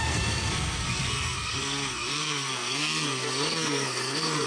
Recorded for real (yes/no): no